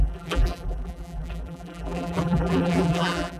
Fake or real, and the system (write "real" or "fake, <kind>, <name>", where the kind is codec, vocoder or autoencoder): fake, vocoder, BigVGAN v2